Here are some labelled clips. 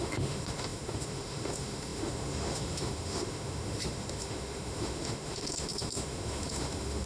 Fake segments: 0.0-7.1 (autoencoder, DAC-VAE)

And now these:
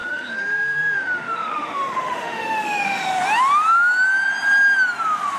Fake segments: 0.0-3.2 (autoencoder, DAC-VAE)

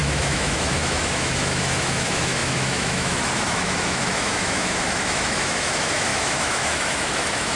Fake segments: 0.0-7.6 (autoencoder, DAC-VAE)

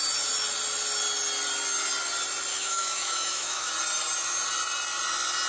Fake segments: 2.5-3.7 (autoencoder, DAC-VAE)

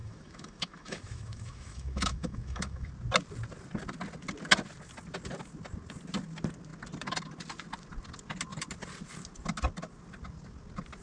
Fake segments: 0.0-2.9 (autoencoder, DAC-VAE)

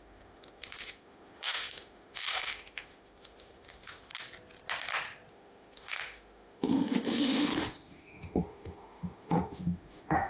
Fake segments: 0.0-4.1 (autoencoder, DAC-VAE); 5.3-10.3

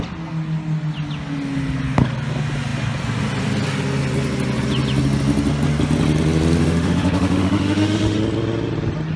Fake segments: 6.6-8.2 (autoencoder, DAC-VAE)

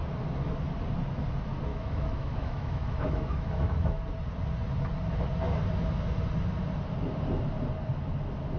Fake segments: 1.7-4.0 (autoencoder, DAC-VAE)